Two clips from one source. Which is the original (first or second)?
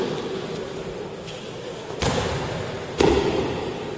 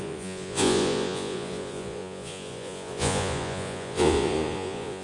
first